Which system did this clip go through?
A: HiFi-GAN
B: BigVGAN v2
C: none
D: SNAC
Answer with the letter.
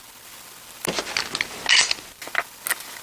C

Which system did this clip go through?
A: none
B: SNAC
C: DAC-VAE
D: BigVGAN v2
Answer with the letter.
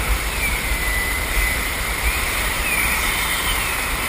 D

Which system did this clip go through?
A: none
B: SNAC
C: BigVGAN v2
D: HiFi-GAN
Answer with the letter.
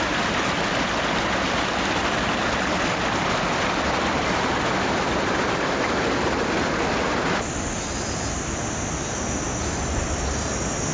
A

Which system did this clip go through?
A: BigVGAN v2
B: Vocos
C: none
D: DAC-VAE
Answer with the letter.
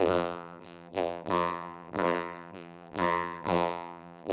A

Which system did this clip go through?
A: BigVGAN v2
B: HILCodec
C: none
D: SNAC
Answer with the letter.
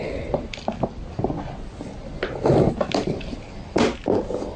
C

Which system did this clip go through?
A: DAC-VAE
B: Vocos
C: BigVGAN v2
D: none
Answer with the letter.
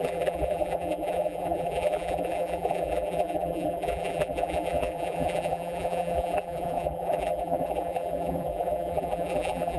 C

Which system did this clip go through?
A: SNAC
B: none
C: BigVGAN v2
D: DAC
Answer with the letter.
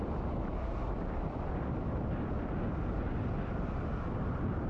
C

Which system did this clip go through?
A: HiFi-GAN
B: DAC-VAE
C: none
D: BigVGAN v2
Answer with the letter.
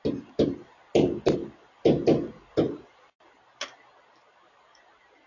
C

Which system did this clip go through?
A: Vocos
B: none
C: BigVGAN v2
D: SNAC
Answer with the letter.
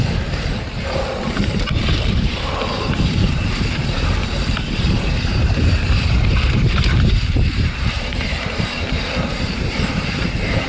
C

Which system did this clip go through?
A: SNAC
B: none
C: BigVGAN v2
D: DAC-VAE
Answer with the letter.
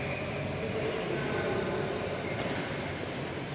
B